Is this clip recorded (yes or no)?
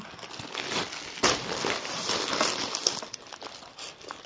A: yes